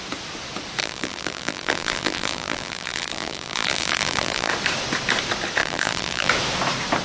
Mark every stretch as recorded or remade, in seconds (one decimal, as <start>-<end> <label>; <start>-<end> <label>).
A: 0.0-0.8 recorded; 0.8-4.5 remade; 4.5-5.6 recorded; 5.6-6.3 remade; 6.3-7.0 recorded